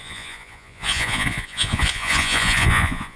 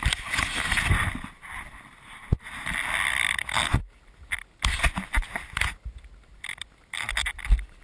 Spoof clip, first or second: first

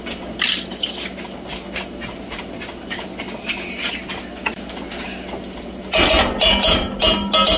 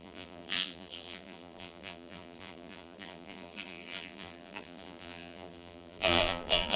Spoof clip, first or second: second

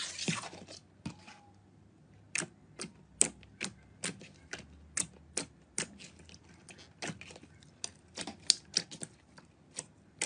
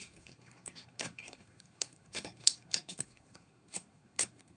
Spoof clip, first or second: second